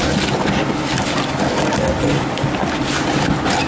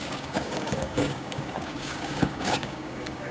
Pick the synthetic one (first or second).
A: second